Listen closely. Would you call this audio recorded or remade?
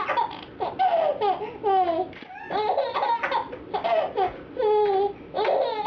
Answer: recorded